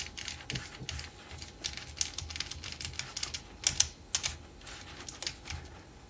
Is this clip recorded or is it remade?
recorded